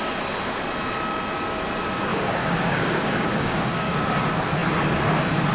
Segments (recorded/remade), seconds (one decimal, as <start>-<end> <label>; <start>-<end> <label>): 0.0-2.1 recorded; 2.1-4.0 remade; 4.0-5.5 recorded